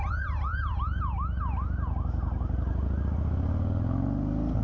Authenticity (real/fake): real